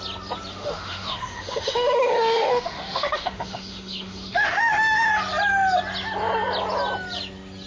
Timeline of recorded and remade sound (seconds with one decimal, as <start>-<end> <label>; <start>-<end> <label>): 0.0-0.5 recorded; 0.5-5.1 remade; 5.1-7.7 recorded